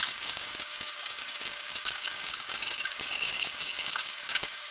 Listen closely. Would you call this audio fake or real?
fake